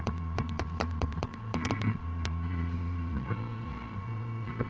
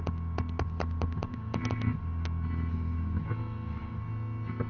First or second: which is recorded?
second